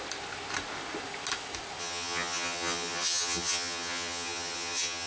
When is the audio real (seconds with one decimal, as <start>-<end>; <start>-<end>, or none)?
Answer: 0.0-1.8